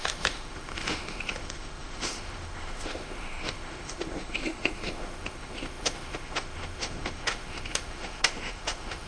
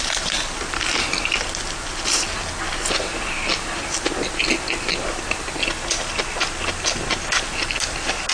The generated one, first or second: first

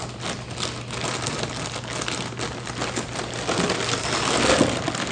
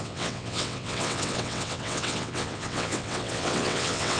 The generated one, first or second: second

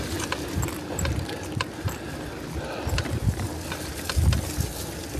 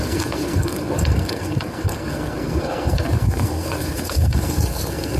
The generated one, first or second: second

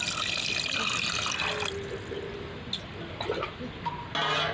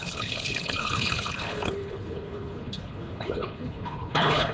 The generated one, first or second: second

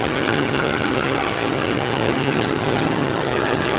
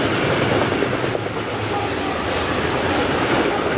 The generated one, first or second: first